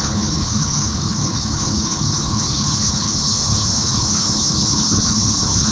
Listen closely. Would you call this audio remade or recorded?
remade